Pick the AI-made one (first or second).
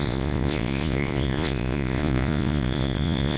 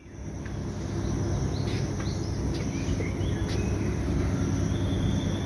first